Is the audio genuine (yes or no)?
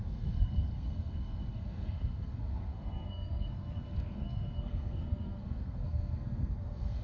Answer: no